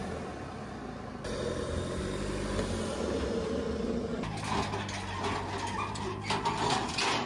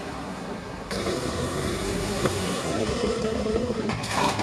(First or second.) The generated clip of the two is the second